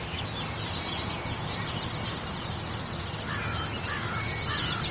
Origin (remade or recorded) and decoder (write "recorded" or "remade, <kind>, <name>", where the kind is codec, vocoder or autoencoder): recorded